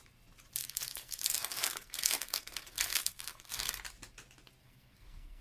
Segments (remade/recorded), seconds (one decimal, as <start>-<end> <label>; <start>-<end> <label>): 0.0-0.6 recorded; 0.6-3.8 remade; 3.8-4.6 recorded; 4.6-5.4 remade